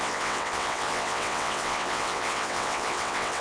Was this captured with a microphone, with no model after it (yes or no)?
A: no